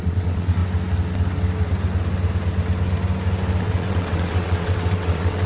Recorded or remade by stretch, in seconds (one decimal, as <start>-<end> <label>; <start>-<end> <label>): 0.0-0.6 remade; 0.6-3.6 recorded; 3.6-5.5 remade